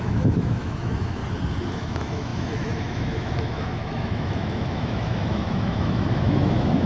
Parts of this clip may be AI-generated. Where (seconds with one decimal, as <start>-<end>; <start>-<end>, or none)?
0.0-1.2; 1.7-6.9